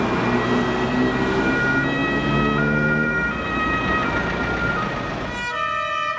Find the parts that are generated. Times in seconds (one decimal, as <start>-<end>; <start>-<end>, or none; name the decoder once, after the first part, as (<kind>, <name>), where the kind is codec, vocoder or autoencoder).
none